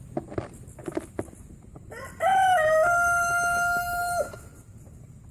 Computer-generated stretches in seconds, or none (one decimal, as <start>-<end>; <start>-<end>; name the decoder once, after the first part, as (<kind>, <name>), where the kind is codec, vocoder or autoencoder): 2.3-4.5 (autoencoder, DAC-VAE)